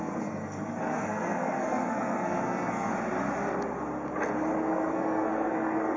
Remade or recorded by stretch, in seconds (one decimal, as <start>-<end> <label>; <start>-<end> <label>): 0.0-2.9 remade; 2.9-4.7 recorded; 4.7-6.0 remade